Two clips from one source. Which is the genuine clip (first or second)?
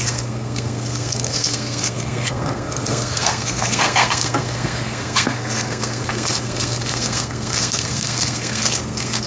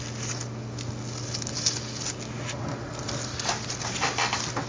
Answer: second